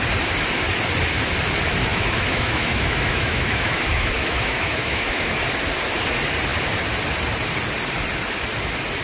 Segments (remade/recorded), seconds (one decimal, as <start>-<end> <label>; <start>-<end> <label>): 0.0-1.9 recorded; 1.9-5.4 remade; 5.4-9.0 recorded